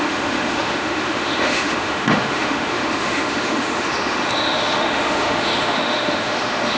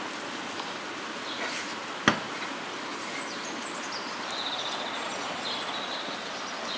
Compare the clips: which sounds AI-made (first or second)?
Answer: first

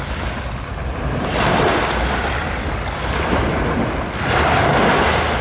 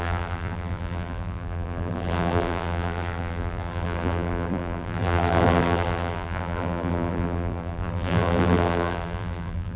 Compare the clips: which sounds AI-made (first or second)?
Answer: second